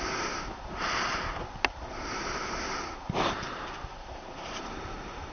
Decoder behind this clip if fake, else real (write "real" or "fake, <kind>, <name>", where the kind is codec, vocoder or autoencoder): real